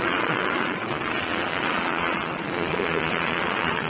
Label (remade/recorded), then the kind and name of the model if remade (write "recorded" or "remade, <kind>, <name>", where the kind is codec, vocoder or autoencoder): remade, vocoder, Vocos